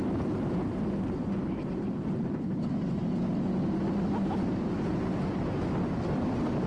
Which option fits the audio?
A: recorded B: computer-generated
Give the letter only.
A